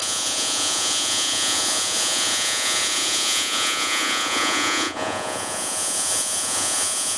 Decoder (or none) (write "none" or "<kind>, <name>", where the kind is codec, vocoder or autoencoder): vocoder, Vocos